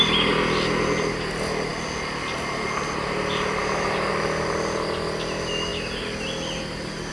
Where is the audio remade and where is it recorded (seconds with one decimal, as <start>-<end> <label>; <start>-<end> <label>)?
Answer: 0.0-3.6 recorded; 3.6-4.1 remade; 4.1-7.1 recorded